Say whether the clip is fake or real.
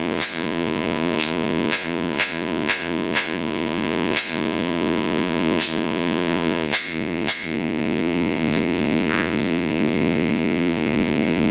fake